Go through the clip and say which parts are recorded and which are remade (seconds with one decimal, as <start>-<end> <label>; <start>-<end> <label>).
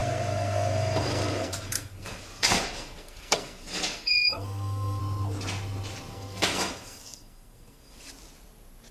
0.0-5.0 remade; 5.0-6.1 recorded; 6.1-8.0 remade; 8.0-8.9 recorded